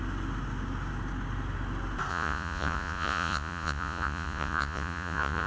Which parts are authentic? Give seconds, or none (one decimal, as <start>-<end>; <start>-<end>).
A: 0.0-2.1